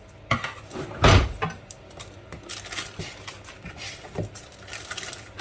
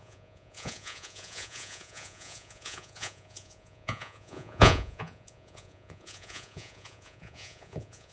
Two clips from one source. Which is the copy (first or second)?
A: second